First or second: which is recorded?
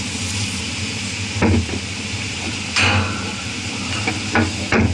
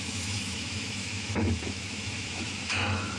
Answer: first